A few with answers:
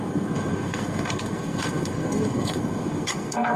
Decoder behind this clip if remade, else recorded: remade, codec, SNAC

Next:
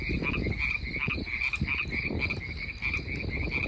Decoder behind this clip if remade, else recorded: recorded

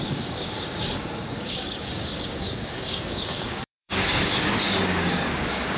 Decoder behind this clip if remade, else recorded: remade, codec, DAC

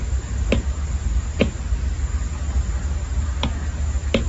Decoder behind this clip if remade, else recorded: recorded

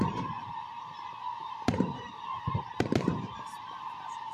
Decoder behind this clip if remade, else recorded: remade, vocoder, BigVGAN v2